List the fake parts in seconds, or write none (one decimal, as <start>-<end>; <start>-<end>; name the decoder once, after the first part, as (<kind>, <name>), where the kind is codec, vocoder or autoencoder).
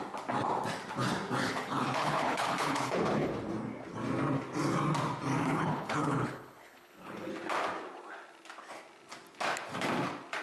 1.4-3.3 (codec, HILCodec); 5.4-7.3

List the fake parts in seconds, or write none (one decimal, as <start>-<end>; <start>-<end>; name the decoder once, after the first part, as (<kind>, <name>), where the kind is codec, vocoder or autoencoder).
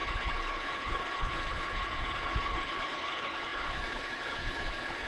0.0-5.1 (codec, HILCodec)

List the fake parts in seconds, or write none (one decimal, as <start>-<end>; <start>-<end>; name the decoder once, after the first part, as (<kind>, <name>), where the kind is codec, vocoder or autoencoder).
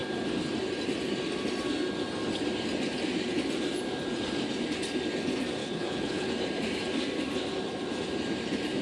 5.6-6.3 (codec, HILCodec)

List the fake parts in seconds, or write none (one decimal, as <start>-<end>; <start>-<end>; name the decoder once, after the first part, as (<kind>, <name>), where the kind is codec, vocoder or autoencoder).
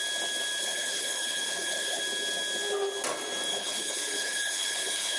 0.6-2.0 (codec, HILCodec); 3.5-5.2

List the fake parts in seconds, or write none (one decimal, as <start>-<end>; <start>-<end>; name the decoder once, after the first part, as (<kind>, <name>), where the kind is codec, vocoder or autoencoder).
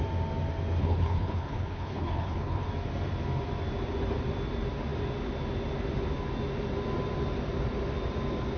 0.8-2.7 (codec, HILCodec)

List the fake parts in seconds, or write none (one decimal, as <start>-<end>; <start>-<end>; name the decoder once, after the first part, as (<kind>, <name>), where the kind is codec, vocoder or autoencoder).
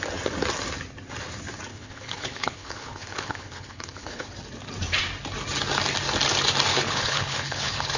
1.7-4.3 (codec, HILCodec); 6.7-8.0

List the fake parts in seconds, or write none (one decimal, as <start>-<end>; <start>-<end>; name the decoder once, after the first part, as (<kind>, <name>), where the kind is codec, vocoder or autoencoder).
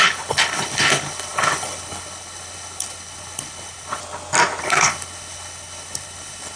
0.0-4.0 (codec, HILCodec); 4.6-6.6